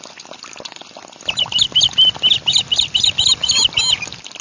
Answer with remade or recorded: recorded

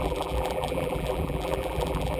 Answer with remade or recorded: remade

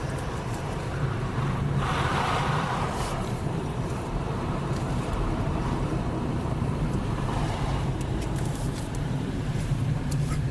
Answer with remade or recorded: remade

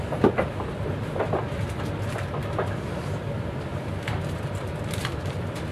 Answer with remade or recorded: remade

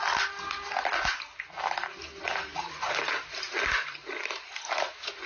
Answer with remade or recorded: recorded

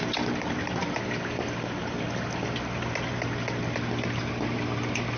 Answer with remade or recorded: recorded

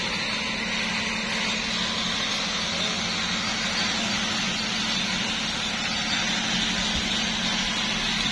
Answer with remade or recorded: recorded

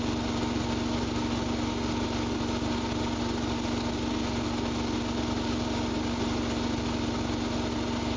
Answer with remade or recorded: recorded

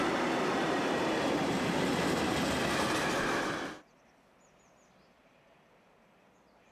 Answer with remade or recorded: recorded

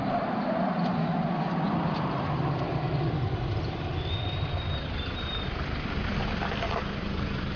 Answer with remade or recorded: remade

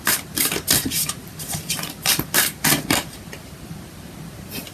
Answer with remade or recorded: remade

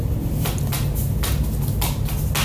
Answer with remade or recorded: recorded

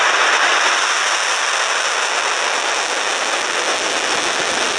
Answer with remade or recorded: recorded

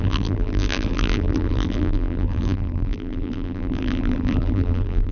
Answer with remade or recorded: remade